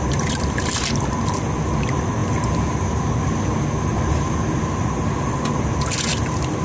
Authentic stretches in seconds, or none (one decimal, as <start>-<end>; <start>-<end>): 0.0-6.6